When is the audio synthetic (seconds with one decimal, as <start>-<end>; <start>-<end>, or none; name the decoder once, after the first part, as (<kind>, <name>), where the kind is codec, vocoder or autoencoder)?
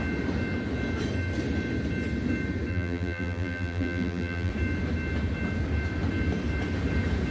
2.7-4.5 (vocoder, BigVGAN v2)